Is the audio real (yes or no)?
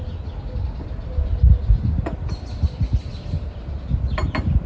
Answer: yes